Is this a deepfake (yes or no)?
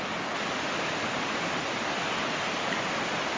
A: no